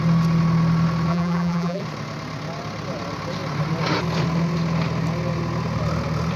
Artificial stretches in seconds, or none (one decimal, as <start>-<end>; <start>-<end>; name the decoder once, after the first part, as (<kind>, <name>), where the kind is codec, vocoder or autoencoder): 1.1-1.8 (vocoder, BigVGAN v2)